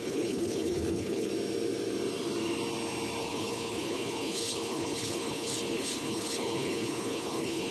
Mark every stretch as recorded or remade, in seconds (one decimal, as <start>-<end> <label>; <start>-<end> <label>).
0.0-1.3 remade; 1.3-3.2 recorded; 3.2-7.7 remade